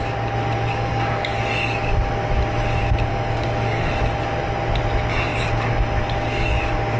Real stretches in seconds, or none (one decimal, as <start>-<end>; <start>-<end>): 0.0-0.7; 1.4-3.1; 3.9-7.0